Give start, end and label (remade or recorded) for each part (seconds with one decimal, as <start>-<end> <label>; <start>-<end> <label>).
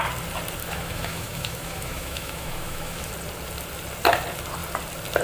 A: 0.0-0.6 recorded; 0.6-3.1 remade; 3.1-5.2 recorded